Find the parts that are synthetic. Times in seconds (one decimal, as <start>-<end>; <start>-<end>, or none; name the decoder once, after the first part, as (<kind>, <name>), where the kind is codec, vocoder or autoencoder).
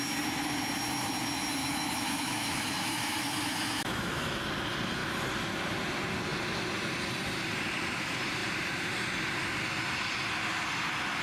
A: 1.6-4.4 (autoencoder, DAC-VAE)